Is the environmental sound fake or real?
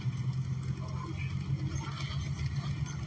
real